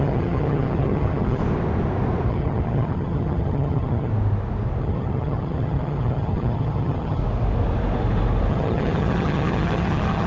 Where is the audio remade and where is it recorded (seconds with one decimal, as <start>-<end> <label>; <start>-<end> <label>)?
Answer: 0.0-1.4 remade; 1.4-2.3 recorded; 2.3-4.1 remade; 4.1-4.8 recorded; 4.8-7.2 remade; 7.2-8.5 recorded; 8.5-10.3 remade

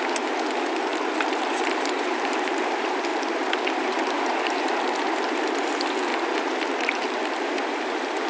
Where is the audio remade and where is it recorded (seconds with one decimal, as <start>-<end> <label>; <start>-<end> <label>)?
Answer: 0.0-0.9 recorded; 0.9-2.6 remade; 2.6-3.1 recorded; 3.1-5.4 remade; 5.4-6.1 recorded; 6.1-7.3 remade; 7.3-8.3 recorded

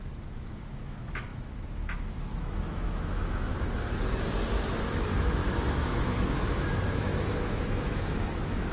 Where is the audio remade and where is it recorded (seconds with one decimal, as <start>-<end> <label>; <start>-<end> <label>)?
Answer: 0.0-3.5 remade; 3.5-4.5 recorded; 4.5-8.7 remade

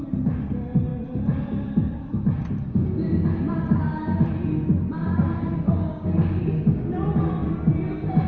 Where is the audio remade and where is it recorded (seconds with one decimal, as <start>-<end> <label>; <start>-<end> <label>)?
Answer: 0.0-5.9 recorded; 5.9-6.4 remade; 6.4-8.3 recorded